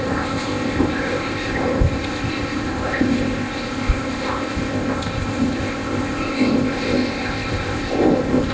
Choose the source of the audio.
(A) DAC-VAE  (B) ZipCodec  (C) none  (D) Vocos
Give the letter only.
B